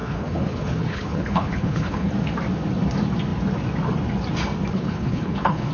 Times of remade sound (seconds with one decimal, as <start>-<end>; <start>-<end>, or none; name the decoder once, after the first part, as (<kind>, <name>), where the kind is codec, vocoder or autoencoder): 0.0-2.1 (codec, HILCodec); 4.7-5.7